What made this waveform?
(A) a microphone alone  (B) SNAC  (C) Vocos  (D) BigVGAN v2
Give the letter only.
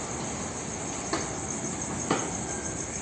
A